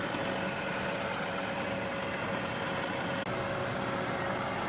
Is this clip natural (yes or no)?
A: yes